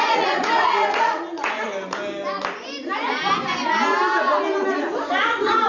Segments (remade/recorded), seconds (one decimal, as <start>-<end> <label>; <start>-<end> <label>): 0.0-1.7 remade; 1.7-5.1 recorded; 5.1-5.7 remade